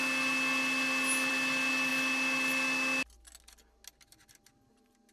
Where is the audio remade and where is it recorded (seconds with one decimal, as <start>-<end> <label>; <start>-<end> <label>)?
0.0-5.1 recorded